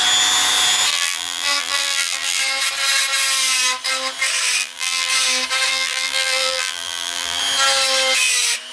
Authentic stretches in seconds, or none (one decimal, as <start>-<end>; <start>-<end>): 0.0-0.9; 2.4-4.6; 5.1-5.7; 7.4-8.7